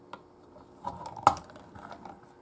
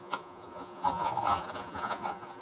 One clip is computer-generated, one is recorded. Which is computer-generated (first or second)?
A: second